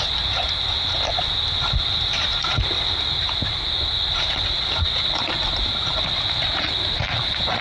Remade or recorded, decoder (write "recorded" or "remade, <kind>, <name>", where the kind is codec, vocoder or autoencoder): recorded